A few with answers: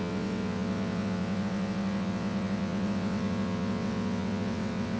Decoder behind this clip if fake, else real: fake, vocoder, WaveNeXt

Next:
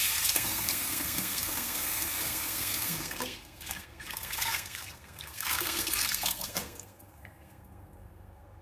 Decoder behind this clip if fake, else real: fake, codec, SNAC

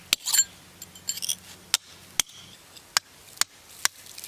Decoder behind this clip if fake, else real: real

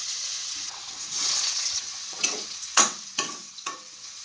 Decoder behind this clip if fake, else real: fake, vocoder, WaveNeXt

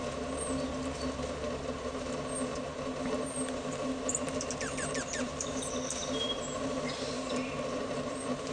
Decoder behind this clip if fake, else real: fake, vocoder, BigVGAN v2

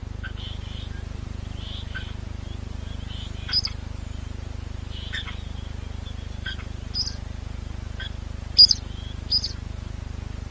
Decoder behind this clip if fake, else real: real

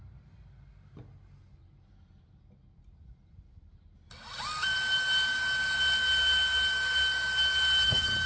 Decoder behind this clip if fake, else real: real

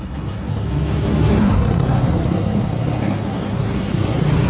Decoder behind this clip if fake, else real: fake, codec, SNAC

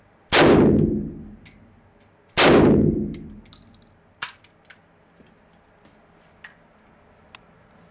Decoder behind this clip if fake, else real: real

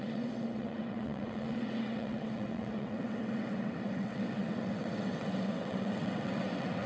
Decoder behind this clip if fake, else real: fake, vocoder, WaveNeXt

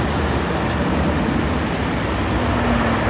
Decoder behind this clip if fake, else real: real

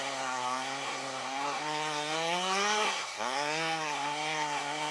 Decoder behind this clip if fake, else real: fake, codec, SNAC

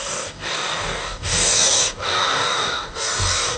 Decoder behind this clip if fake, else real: fake, codec, DAC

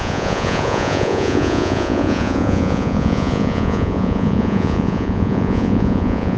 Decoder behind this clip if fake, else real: fake, vocoder, Vocos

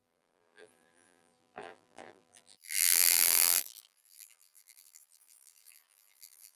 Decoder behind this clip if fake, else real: fake, vocoder, BigVGAN v2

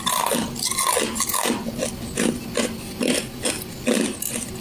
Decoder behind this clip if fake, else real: real